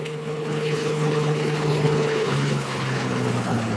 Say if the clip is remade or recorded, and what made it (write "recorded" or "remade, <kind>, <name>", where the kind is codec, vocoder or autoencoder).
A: remade, codec, HILCodec